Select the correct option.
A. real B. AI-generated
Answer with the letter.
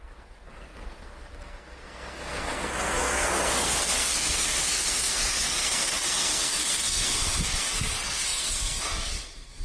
B